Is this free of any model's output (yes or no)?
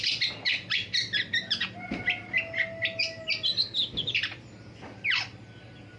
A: yes